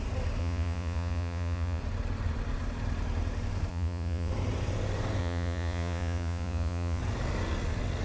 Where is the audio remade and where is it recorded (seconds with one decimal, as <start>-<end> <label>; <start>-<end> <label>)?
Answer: 0.0-0.4 recorded; 0.4-1.8 remade; 1.8-3.7 recorded; 3.7-4.3 remade; 4.3-5.2 recorded; 5.2-7.0 remade; 7.0-8.0 recorded